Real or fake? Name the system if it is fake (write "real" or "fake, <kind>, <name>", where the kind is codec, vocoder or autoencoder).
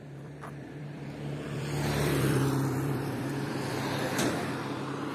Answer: fake, vocoder, BigVGAN v2